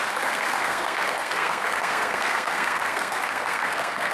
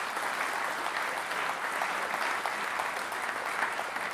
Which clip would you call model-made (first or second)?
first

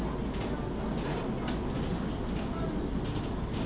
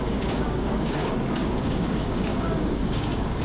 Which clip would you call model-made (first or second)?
second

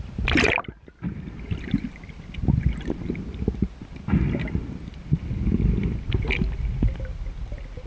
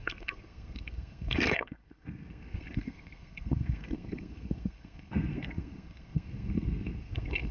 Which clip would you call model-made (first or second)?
second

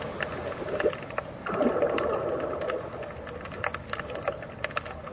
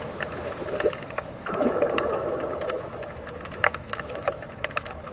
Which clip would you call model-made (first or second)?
second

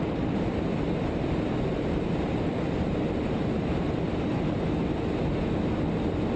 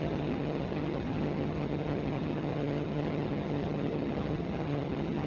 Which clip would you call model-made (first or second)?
second